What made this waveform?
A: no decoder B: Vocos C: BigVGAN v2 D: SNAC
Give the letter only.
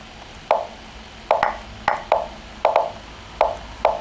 A